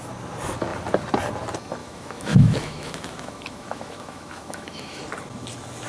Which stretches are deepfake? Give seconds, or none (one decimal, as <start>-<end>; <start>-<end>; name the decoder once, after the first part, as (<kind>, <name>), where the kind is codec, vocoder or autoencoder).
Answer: 1.8-5.0 (autoencoder, DAC-VAE)